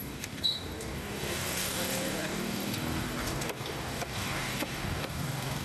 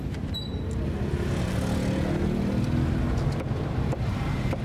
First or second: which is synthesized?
first